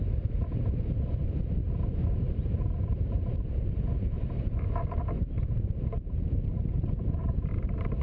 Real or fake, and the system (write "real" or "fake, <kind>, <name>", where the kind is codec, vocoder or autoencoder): fake, vocoder, BigVGAN v2